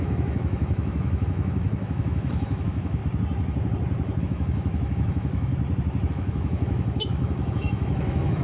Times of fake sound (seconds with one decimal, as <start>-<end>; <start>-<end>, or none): 0.0-3.0; 4.2-5.5; 6.1-8.4